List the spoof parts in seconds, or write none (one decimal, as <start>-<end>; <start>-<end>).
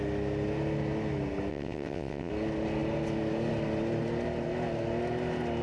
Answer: 1.5-2.3